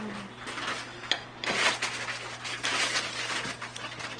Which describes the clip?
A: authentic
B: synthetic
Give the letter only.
A